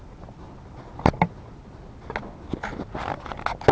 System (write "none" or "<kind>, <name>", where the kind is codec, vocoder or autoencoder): none